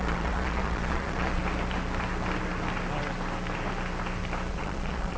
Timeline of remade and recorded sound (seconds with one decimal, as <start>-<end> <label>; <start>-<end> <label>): 0.0-1.4 remade; 1.4-4.5 recorded; 4.5-5.2 remade